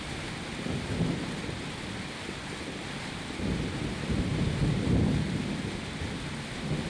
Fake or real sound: real